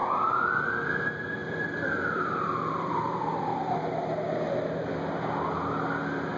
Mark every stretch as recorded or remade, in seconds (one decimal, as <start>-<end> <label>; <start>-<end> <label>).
0.0-3.8 remade; 3.8-6.4 recorded